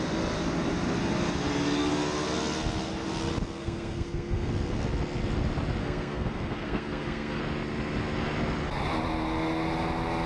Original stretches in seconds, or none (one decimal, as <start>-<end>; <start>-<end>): 0.0-3.6; 4.5-5.8; 7.4-10.3